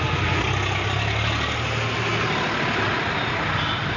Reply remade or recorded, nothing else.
recorded